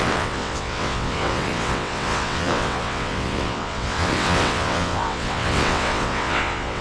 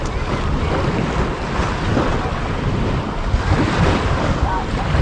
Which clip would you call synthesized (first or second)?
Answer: first